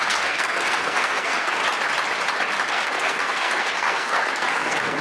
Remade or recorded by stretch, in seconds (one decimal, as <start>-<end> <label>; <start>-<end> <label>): 0.0-1.6 remade; 1.6-2.7 recorded; 2.7-5.0 remade

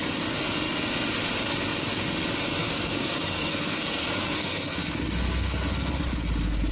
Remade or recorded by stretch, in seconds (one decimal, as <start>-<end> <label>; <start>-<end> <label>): 0.0-2.6 recorded; 2.6-6.0 remade; 6.0-6.7 recorded